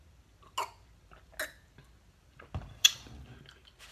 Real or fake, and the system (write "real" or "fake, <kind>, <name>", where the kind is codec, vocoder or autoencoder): real